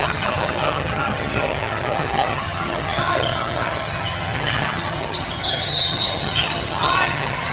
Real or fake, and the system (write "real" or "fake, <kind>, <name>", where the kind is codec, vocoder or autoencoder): fake, vocoder, HiFi-GAN